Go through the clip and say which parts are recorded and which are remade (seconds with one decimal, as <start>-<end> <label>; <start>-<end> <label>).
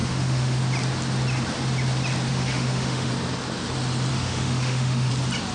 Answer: 0.0-0.6 remade; 0.6-2.3 recorded; 2.3-3.1 remade; 3.1-4.1 recorded; 4.1-5.1 remade; 5.1-5.5 recorded